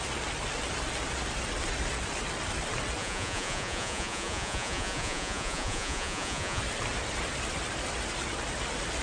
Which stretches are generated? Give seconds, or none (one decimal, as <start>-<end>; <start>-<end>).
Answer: 3.0-6.6